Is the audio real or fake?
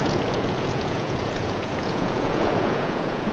fake